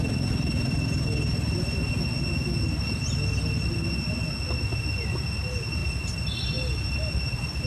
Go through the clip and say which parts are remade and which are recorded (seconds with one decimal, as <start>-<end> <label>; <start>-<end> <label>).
0.0-0.5 recorded; 0.5-1.9 remade; 1.9-5.8 recorded; 5.8-6.5 remade; 6.5-7.7 recorded

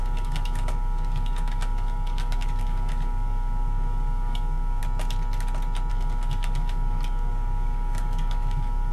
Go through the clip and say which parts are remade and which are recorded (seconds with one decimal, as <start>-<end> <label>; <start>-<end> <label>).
0.0-4.8 remade; 4.8-5.9 recorded; 5.9-8.9 remade

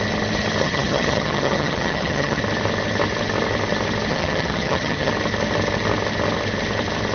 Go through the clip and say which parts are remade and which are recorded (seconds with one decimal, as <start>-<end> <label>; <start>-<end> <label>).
0.0-0.6 recorded; 0.6-2.4 remade; 2.4-4.1 recorded; 4.1-5.1 remade; 5.1-7.1 recorded

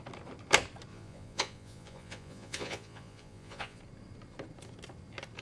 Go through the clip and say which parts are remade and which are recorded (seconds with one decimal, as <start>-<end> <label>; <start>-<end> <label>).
0.0-0.9 recorded; 0.9-3.8 remade; 3.8-5.4 recorded

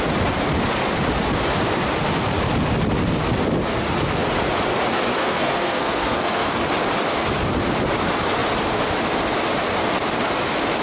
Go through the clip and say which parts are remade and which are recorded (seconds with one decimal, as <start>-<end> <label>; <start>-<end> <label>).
0.0-5.2 recorded; 5.2-6.5 remade; 6.5-10.8 recorded

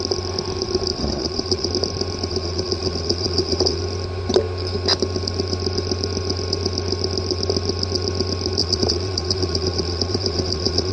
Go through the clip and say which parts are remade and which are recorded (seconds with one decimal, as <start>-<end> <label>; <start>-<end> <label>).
0.0-0.9 recorded; 0.9-1.7 remade; 1.7-2.3 recorded; 2.3-3.8 remade; 3.8-8.6 recorded; 8.6-10.9 remade

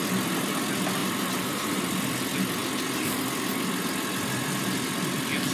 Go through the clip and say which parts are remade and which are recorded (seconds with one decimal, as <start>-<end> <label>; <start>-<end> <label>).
0.0-1.0 recorded; 1.0-1.8 remade; 1.8-5.5 recorded

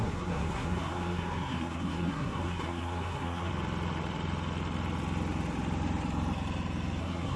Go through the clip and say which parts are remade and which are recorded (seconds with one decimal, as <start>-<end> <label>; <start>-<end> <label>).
0.0-3.5 remade; 3.5-7.0 recorded; 7.0-7.4 remade